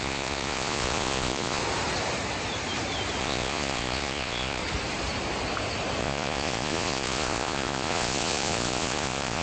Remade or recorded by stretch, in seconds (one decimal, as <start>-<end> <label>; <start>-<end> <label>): 0.0-1.6 remade; 1.6-3.2 recorded; 3.2-4.6 remade; 4.6-6.0 recorded; 6.0-9.4 remade